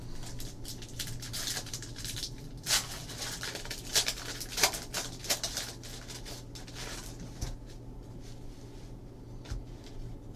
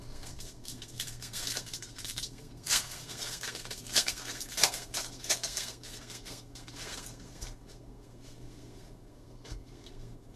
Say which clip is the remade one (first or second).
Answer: second